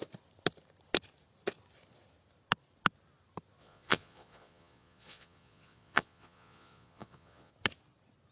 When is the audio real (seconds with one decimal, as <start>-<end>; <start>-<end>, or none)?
0.0-3.6; 7.5-8.3

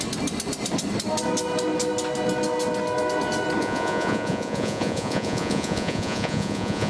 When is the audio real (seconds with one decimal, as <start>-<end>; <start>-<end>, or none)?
0.0-3.6

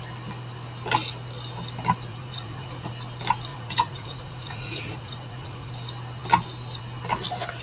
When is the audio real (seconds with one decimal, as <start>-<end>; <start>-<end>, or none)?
0.0-2.1; 2.9-3.5; 5.7-7.6

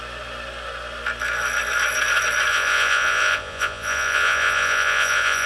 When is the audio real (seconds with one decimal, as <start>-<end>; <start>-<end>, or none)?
0.0-2.5

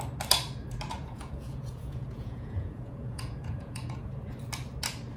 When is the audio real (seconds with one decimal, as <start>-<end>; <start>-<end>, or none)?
0.0-1.0; 4.1-5.2